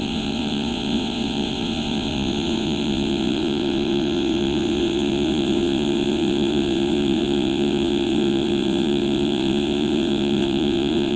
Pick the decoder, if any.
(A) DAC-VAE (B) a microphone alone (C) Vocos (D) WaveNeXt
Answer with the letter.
D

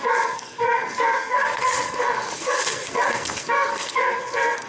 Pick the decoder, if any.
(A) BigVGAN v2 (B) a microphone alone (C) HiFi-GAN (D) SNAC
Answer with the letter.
D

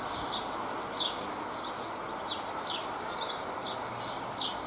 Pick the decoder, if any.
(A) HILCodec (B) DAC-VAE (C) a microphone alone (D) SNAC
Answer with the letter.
C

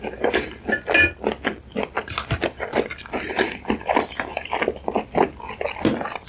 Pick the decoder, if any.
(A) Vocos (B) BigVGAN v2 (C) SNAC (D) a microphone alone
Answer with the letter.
D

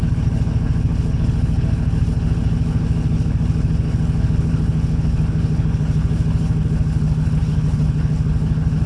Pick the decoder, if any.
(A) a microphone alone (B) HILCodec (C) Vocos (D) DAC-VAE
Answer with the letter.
B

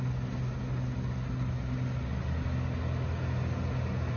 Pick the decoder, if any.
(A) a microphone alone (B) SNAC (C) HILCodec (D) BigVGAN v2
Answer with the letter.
A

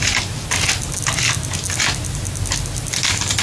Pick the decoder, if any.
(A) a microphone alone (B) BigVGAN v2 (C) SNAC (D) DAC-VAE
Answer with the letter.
A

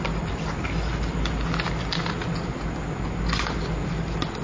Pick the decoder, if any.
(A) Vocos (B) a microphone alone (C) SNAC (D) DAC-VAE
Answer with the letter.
B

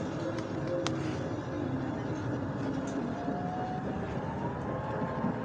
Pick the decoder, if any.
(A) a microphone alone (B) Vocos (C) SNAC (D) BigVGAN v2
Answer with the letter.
A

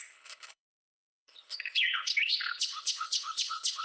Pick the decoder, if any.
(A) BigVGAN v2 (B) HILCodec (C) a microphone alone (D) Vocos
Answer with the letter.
B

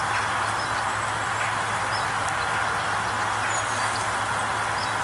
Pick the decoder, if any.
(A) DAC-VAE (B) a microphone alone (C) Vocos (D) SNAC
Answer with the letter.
B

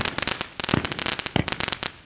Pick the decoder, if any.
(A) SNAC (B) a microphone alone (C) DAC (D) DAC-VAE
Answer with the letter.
B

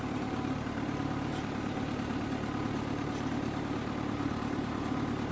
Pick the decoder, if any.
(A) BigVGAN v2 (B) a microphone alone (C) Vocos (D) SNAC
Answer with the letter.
A